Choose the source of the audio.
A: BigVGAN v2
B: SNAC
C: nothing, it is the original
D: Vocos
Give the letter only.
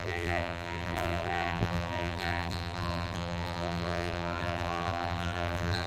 A